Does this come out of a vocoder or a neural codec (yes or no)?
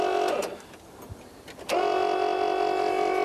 no